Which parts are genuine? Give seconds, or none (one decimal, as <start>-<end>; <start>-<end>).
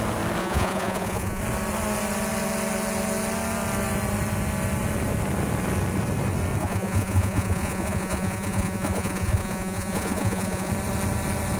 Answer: 0.0-0.4; 1.4-6.6; 10.7-11.6